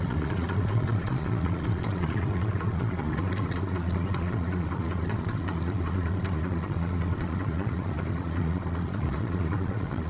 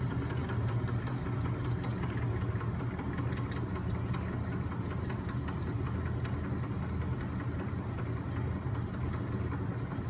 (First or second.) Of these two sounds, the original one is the second